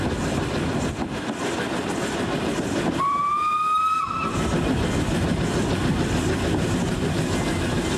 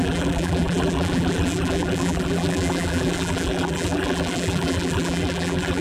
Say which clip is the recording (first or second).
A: first